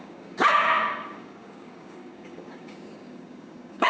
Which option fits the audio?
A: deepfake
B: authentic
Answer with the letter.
A